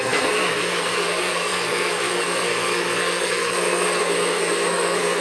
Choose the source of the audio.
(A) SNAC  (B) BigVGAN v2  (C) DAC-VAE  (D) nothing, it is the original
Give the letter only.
A